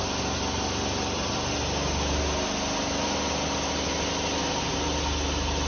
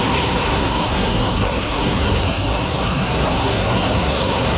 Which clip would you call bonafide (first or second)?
first